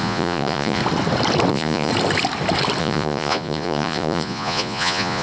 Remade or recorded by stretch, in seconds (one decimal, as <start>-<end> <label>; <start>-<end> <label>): 0.0-0.8 remade; 0.8-1.5 recorded; 1.5-1.9 remade; 1.9-2.8 recorded; 2.8-5.2 remade